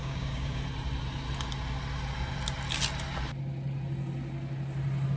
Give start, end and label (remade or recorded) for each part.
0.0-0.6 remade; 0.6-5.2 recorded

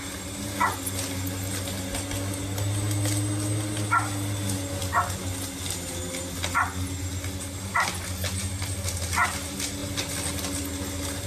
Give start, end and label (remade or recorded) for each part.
0.0-11.3 recorded

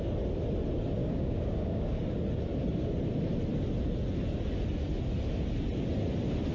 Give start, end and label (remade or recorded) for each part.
0.0-1.0 recorded; 1.0-2.2 remade; 2.2-6.5 recorded

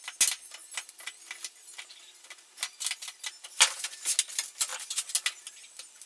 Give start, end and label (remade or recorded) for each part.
0.0-6.1 recorded

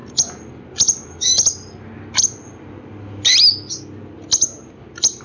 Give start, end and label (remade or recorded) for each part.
0.0-5.2 recorded